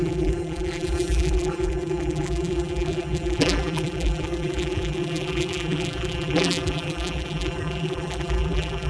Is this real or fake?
fake